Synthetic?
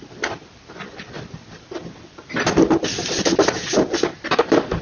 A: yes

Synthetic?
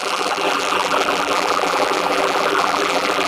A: yes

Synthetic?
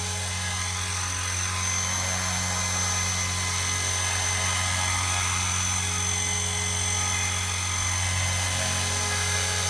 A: no